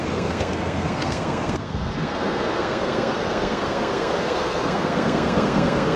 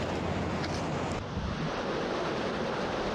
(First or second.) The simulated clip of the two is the first